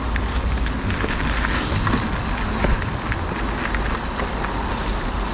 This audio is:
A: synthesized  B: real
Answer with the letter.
B